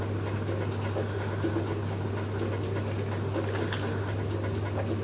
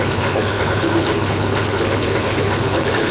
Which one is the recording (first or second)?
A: first